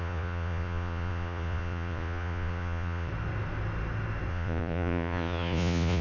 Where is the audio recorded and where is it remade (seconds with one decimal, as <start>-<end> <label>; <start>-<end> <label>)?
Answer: 0.0-3.1 remade; 3.1-4.3 recorded; 4.3-6.0 remade